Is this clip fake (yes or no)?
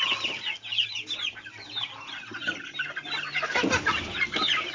no